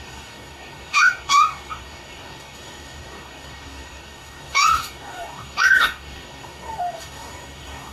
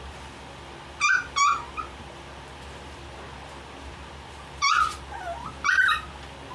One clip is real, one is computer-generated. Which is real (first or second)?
second